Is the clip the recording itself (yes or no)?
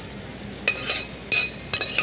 yes